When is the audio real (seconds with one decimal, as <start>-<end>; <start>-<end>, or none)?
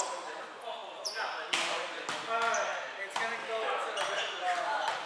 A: 0.0-3.4